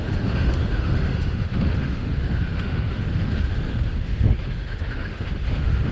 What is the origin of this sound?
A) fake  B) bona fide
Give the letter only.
A